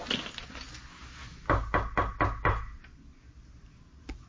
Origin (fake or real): real